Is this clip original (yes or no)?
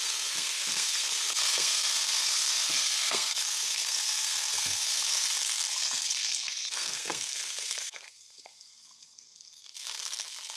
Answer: no